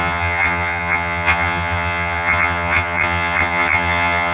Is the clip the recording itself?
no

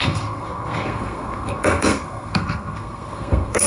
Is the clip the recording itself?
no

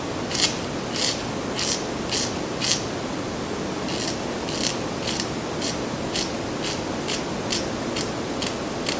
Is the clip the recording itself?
yes